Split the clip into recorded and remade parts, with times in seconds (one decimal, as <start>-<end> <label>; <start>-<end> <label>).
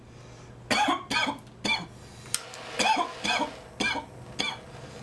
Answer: 0.0-5.0 recorded